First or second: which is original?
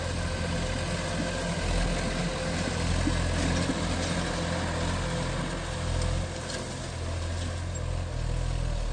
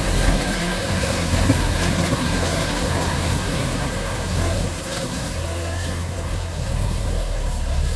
first